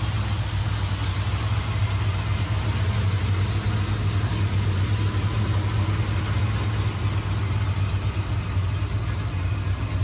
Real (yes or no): yes